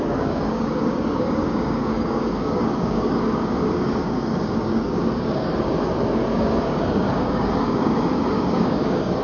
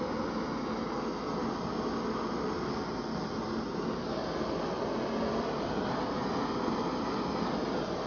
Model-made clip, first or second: first